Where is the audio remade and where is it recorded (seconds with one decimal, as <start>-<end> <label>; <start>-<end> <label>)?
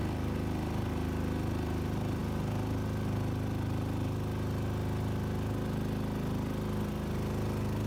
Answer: 0.0-7.9 recorded